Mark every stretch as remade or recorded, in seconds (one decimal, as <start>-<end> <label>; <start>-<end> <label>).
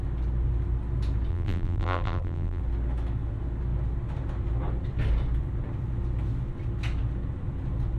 0.0-1.3 recorded; 1.3-2.6 remade; 2.6-8.0 recorded